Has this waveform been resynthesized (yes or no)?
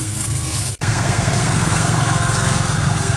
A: yes